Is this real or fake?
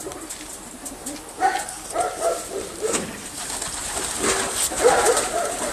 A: real